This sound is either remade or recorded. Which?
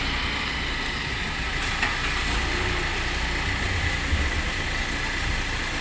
recorded